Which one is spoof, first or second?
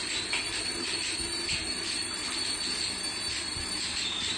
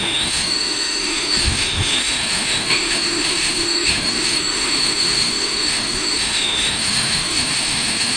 second